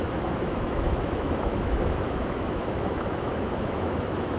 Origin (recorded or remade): remade